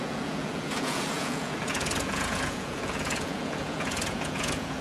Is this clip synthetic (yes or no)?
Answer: yes